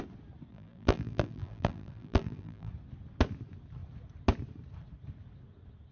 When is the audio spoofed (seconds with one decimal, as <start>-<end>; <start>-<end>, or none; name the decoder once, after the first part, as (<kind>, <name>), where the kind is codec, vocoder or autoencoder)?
0.5-2.7 (vocoder, BigVGAN v2)